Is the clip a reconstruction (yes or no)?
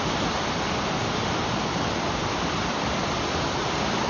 no